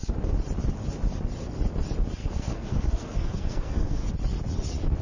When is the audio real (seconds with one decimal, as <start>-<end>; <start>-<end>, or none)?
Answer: 0.0-2.2; 4.1-5.0